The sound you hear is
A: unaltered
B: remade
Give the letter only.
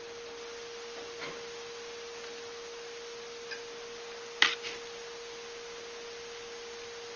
A